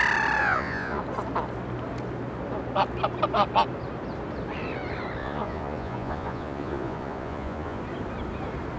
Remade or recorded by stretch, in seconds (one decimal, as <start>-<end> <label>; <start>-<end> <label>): 0.0-0.4 recorded; 0.4-1.0 remade; 1.0-5.2 recorded; 5.2-7.8 remade; 7.8-8.8 recorded

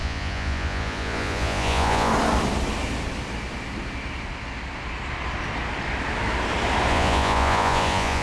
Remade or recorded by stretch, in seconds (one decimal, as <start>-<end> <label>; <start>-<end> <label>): 0.0-2.1 remade; 2.1-6.9 recorded; 6.9-8.2 remade